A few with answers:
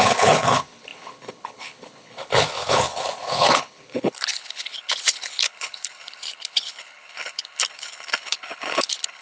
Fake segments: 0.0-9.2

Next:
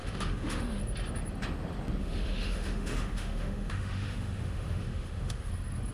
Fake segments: 0.0-0.8; 2.0-5.5

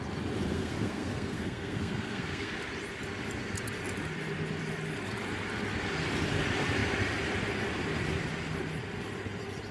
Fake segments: 0.5-2.5